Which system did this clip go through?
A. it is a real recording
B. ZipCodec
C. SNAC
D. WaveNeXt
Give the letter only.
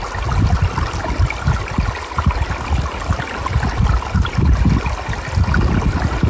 A